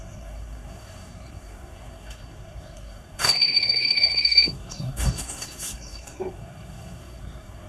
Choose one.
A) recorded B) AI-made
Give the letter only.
B